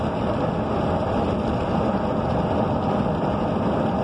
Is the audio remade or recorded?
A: recorded